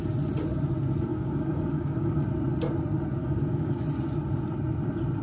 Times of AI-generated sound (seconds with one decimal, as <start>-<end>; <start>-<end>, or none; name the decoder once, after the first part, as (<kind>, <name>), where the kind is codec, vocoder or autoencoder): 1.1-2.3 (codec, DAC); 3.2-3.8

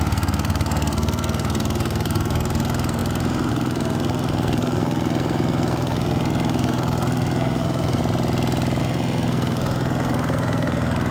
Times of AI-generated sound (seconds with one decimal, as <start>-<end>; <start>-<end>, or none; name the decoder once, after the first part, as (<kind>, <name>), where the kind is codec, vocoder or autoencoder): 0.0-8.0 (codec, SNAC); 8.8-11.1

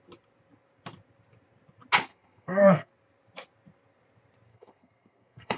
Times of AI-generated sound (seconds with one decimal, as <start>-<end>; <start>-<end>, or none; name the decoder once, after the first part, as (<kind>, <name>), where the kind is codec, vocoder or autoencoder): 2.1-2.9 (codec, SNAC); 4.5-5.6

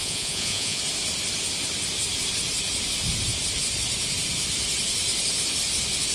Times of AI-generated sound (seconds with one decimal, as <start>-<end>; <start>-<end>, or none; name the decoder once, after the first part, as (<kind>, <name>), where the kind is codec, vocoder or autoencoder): 0.0-0.8 (vocoder, Vocos)

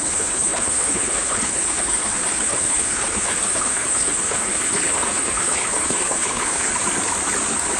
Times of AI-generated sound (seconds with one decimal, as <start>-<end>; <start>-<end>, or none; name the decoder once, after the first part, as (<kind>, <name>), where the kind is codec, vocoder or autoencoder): 0.0-6.7 (codec, HILCodec)

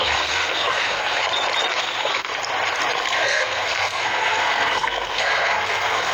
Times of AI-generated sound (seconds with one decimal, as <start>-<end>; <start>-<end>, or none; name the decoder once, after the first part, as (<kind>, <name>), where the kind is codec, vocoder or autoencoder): 0.0-1.2 (codec, SNAC); 1.8-2.3; 3.0-6.1

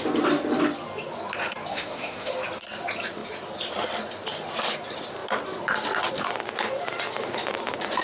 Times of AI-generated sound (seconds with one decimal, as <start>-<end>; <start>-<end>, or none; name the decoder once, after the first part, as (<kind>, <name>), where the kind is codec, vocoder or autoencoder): 1.7-2.3 (autoencoder, DAC-VAE)